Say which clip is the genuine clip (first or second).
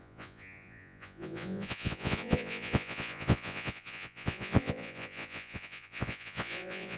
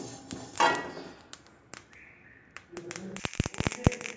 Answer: second